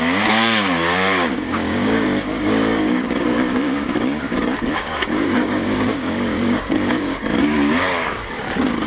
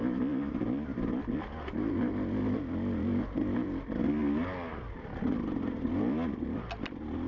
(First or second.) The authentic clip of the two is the second